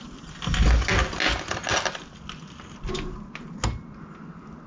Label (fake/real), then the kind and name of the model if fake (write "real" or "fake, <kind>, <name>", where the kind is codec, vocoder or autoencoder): real